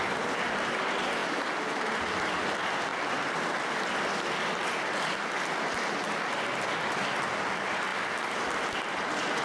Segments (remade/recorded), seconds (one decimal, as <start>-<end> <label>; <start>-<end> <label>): 0.0-9.4 recorded